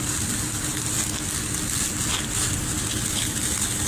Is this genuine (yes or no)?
yes